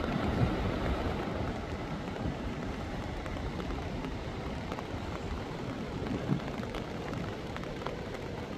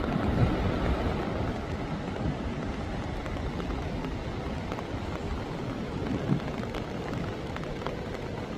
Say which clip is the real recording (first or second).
second